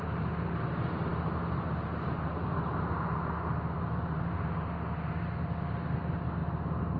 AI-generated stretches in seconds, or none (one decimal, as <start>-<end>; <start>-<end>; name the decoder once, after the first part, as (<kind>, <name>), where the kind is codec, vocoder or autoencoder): none